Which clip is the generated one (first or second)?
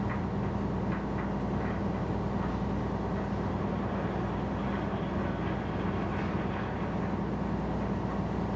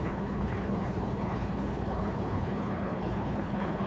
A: second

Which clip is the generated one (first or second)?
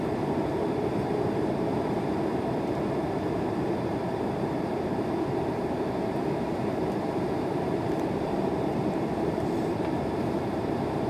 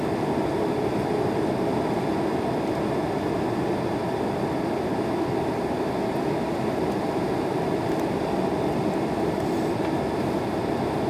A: first